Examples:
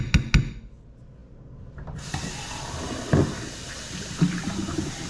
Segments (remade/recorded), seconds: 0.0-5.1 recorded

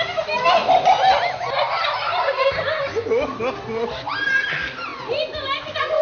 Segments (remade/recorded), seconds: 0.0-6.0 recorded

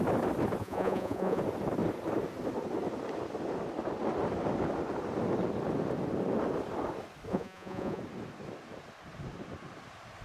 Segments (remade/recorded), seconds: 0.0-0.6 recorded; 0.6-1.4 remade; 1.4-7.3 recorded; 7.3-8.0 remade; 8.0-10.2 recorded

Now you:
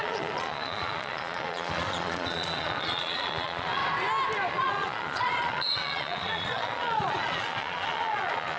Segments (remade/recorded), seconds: 0.0-3.8 remade; 3.8-4.5 recorded; 4.5-8.6 remade

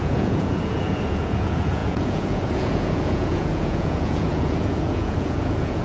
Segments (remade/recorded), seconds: 0.0-5.8 remade

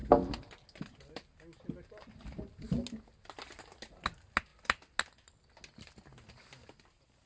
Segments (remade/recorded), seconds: 0.0-7.3 recorded

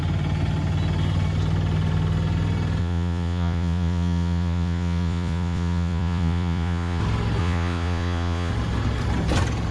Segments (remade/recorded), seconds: 0.0-2.8 recorded; 2.8-7.0 remade; 7.0-7.4 recorded; 7.4-8.5 remade; 8.5-9.7 recorded

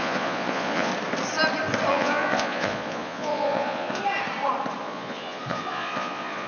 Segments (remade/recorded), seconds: 0.0-0.9 remade; 0.9-1.9 recorded; 1.9-4.0 remade; 4.0-4.8 recorded; 4.8-6.5 remade